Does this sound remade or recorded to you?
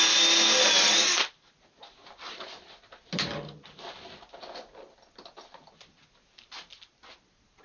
recorded